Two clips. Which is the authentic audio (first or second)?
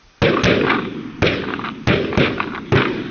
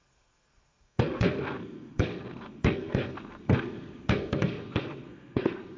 first